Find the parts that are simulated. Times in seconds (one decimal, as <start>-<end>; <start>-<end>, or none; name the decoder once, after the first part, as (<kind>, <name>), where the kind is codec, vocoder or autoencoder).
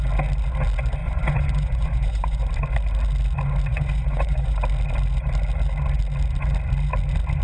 1.0-2.5 (vocoder, Vocos); 3.7-4.6